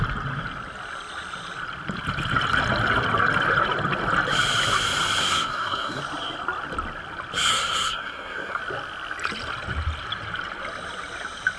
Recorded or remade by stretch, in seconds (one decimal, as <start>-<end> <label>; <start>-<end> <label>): 0.0-5.2 recorded; 5.2-6.0 remade; 6.0-7.5 recorded; 7.5-8.6 remade; 8.6-11.6 recorded